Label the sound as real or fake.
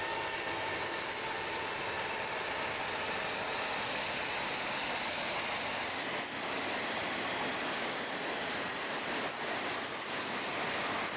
real